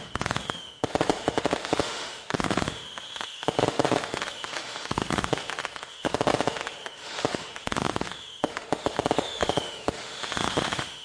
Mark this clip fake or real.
fake